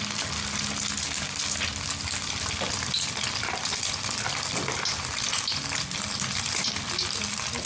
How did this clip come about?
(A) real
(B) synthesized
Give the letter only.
A